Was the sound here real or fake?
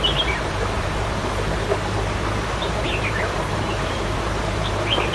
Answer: fake